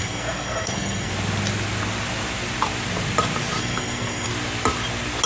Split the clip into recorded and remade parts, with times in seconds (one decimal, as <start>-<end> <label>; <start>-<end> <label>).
0.0-1.1 remade; 1.1-3.6 recorded; 3.6-4.3 remade; 4.3-5.3 recorded